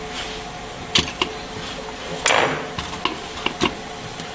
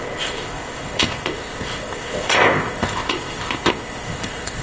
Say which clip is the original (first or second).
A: first